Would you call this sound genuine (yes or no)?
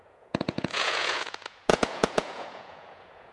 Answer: no